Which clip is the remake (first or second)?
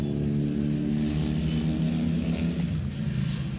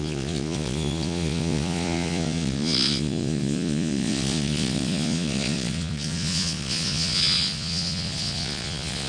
second